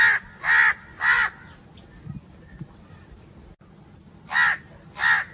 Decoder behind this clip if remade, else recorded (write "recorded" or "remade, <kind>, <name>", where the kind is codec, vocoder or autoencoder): recorded